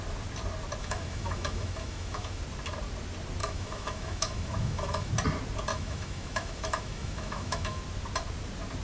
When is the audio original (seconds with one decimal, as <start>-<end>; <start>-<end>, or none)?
0.0-0.8; 2.4-3.4; 5.1-5.7; 7.8-8.8